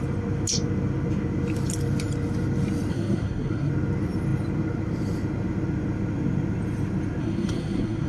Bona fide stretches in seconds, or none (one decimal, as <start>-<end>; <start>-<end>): 0.0-2.9; 3.7-7.2